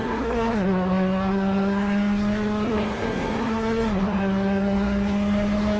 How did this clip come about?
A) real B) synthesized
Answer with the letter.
B